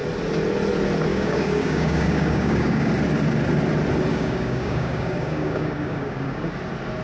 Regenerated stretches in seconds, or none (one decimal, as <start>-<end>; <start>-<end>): 1.1-2.9; 4.1-6.5